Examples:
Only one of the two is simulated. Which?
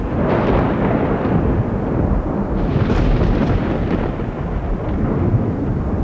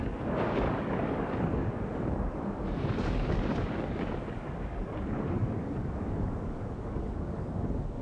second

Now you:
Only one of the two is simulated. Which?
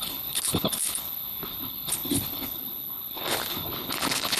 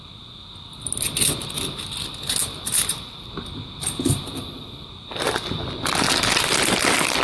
first